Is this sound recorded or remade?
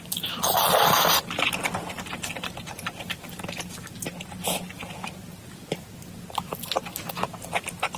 recorded